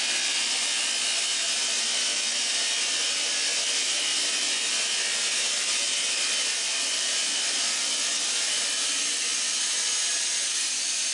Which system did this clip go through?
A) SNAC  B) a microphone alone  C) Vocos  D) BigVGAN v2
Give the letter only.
D